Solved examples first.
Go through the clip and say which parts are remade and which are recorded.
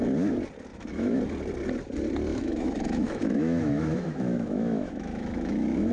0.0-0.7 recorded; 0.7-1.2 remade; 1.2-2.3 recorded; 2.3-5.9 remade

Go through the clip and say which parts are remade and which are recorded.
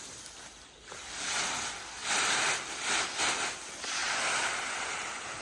0.0-2.0 recorded; 2.0-3.4 remade; 3.4-4.0 recorded; 4.0-5.4 remade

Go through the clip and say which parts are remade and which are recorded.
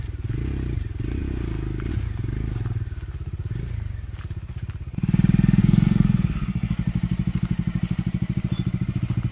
0.0-5.6 recorded; 5.6-6.7 remade; 6.7-9.3 recorded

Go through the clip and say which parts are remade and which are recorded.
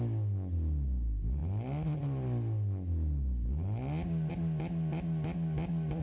0.0-6.0 recorded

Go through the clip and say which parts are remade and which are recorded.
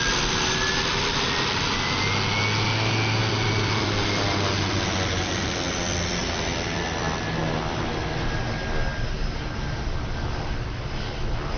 0.0-0.9 recorded; 0.9-2.0 remade; 2.0-3.2 recorded; 3.2-6.8 remade; 6.8-11.6 recorded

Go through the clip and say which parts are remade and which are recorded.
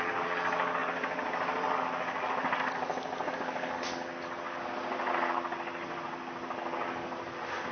0.0-7.7 recorded